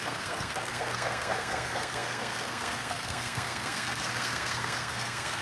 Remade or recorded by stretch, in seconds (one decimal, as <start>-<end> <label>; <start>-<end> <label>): 0.0-5.4 remade